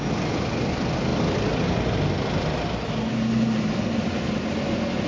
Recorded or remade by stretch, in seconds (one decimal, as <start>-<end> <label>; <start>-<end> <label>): 0.0-5.1 recorded

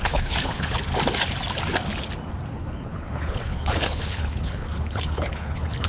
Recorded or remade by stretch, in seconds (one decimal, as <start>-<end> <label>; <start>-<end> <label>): 0.0-0.9 remade; 0.9-2.5 recorded; 2.5-5.9 remade